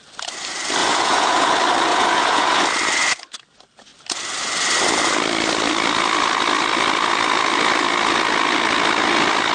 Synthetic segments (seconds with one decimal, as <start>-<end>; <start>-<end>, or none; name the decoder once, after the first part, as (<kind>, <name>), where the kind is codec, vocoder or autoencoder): 0.8-1.5 (vocoder, Vocos); 1.9-2.6

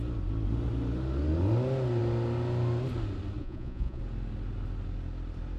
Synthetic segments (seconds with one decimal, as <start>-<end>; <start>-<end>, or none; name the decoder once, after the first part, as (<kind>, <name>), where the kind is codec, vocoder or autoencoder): 3.4-4.0 (vocoder, Vocos)

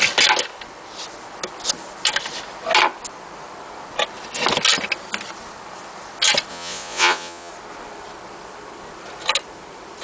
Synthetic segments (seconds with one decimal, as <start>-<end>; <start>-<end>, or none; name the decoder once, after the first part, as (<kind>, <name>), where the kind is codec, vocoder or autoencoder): 6.5-7.5 (vocoder, Vocos)

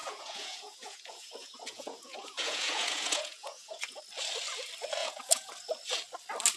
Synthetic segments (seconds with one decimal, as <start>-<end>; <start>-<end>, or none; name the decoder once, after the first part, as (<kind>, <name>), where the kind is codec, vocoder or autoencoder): 0.0-4.0 (vocoder, Vocos); 5.0-5.5